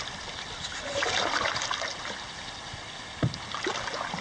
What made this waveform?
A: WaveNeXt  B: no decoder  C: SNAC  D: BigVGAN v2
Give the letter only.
B